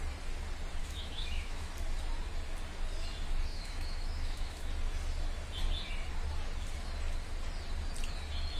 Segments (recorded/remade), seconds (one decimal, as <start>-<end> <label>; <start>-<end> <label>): 0.0-0.8 recorded; 0.8-1.7 remade; 1.7-3.5 recorded; 3.5-4.7 remade; 4.7-8.6 recorded